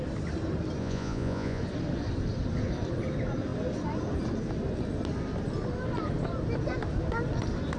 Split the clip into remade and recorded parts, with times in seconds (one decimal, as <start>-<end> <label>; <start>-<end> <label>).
0.0-0.8 recorded; 0.8-1.6 remade; 1.6-7.8 recorded